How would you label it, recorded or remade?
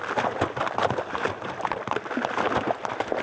recorded